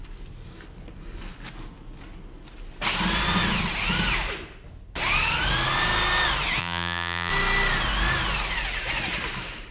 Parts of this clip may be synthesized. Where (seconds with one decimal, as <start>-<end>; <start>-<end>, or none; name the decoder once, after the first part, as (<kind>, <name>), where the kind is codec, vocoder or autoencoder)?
6.6-7.3 (vocoder, BigVGAN v2)